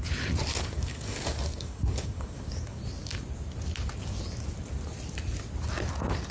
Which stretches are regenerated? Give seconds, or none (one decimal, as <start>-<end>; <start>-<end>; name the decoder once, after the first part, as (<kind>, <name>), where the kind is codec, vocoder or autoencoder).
0.5-2.8 (codec, DAC)